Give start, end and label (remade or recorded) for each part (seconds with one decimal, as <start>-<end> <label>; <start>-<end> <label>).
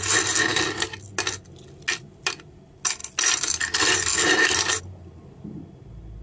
0.0-6.2 recorded